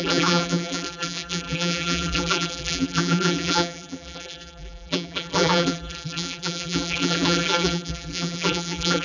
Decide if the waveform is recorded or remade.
remade